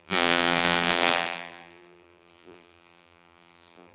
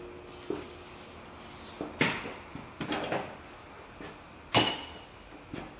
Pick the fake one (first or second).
first